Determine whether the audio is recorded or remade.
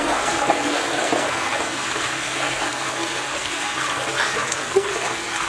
remade